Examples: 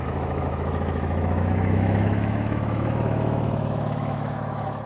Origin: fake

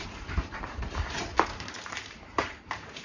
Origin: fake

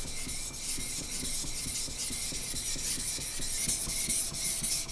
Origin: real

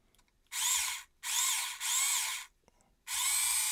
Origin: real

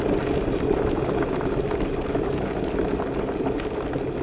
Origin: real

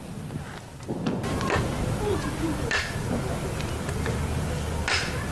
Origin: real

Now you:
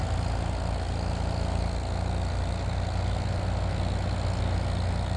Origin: real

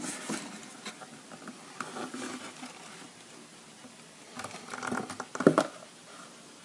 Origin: real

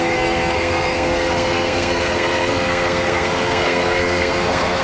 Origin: fake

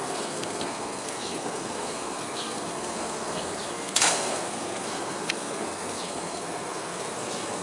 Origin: fake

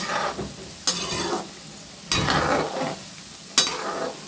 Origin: real